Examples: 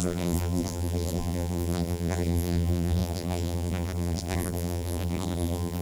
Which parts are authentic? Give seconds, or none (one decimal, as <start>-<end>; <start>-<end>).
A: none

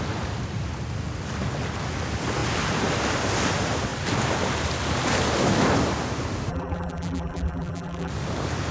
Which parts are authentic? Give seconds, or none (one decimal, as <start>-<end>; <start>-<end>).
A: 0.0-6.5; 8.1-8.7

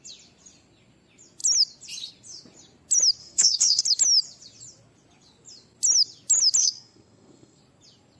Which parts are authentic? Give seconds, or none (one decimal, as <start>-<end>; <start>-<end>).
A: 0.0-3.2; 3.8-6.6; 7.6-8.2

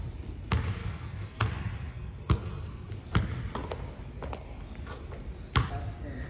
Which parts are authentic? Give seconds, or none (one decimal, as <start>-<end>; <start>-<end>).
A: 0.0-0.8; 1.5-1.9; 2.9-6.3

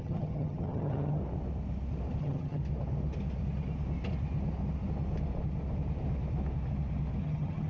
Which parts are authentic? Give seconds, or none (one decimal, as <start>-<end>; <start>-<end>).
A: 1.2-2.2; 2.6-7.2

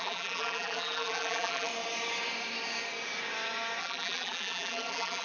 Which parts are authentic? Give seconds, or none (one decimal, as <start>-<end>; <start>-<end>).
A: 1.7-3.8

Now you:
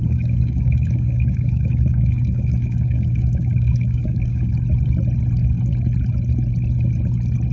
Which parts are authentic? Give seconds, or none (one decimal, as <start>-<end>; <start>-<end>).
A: 4.5-7.5

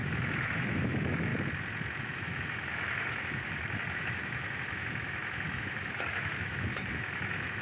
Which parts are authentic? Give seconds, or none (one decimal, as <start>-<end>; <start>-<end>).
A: 1.3-2.0